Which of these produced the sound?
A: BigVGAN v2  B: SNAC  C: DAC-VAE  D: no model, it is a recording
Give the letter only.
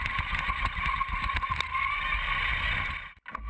D